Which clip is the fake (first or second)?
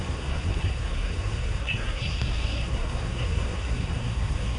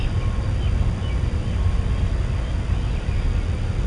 first